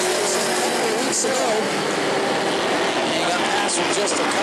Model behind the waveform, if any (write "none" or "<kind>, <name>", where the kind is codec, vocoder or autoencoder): none